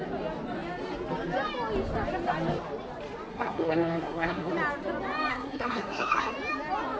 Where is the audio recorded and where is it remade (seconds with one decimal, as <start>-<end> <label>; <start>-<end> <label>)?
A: 0.0-3.3 recorded; 3.3-4.5 remade; 4.5-5.3 recorded; 5.3-6.3 remade; 6.3-7.0 recorded